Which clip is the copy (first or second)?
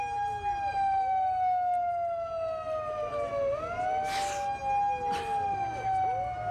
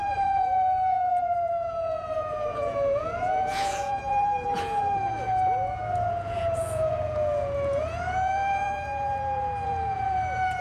second